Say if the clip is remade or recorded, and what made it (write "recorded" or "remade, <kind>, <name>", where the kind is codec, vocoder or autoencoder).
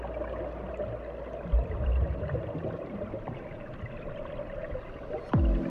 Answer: recorded